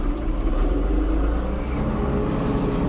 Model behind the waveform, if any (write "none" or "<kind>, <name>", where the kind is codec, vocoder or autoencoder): none